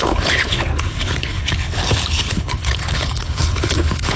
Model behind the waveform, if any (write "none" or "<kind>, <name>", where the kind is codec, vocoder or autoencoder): codec, HILCodec